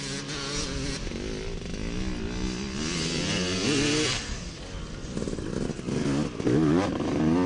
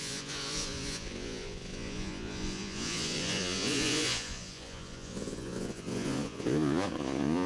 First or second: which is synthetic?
second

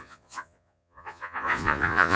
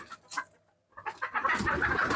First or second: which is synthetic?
first